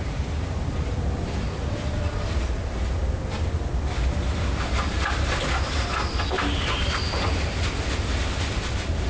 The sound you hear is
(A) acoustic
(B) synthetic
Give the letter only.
A